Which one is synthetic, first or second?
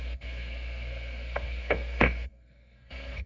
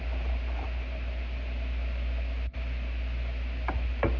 first